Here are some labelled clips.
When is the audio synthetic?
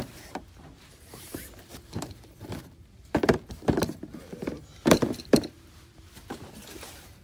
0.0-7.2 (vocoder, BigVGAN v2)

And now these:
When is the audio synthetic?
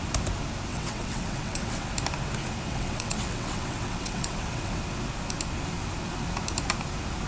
0.7-1.9 (vocoder, WaveNeXt); 2.7-4.8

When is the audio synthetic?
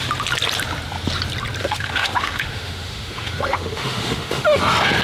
1.6-4.6 (autoencoder, DAC-VAE)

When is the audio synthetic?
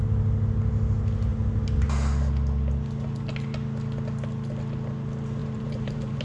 5.4-6.2 (vocoder, BigVGAN v2)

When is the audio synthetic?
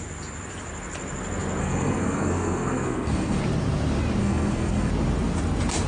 1.6-3.4 (codec, SNAC); 4.2-4.9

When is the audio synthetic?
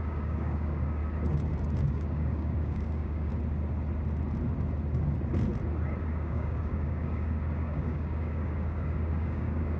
0.0-1.0 (codec, DAC); 1.8-3.3; 6.0-9.8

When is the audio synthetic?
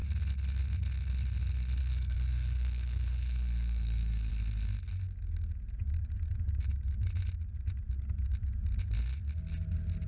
1.8-4.3 (codec, SNAC)